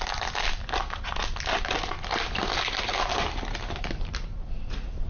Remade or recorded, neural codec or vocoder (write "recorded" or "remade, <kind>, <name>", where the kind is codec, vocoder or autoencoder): recorded